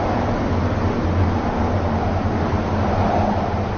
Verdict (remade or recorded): recorded